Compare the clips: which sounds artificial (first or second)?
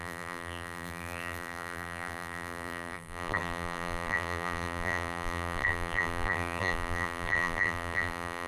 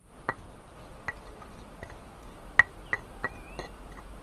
first